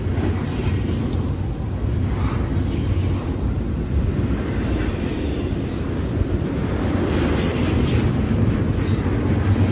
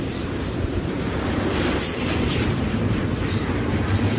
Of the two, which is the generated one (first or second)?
second